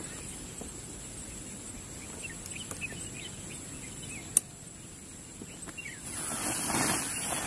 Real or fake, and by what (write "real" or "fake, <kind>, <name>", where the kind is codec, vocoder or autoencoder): real